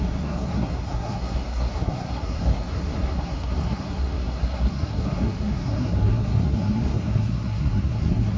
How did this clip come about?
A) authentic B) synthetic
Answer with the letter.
B